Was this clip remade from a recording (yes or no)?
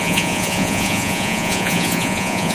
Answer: yes